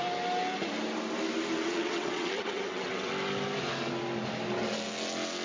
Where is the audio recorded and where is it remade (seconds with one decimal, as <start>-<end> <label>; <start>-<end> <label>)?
0.0-1.8 recorded; 1.8-3.1 remade; 3.1-5.4 recorded